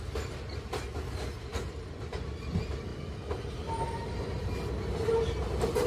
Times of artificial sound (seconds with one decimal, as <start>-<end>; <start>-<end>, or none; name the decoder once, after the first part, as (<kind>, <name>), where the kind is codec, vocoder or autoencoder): 1.5-2.5 (vocoder, BigVGAN v2)